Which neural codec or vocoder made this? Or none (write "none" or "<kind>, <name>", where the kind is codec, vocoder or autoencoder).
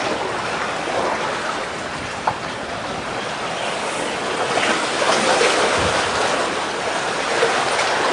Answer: none